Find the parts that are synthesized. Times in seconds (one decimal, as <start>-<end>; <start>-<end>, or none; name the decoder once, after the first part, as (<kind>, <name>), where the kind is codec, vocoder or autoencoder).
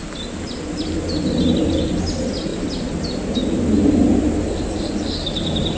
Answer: none